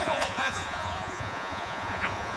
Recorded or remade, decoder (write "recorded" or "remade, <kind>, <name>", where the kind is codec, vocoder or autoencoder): remade, vocoder, Vocos